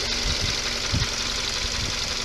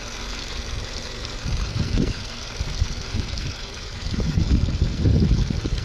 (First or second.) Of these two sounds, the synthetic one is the second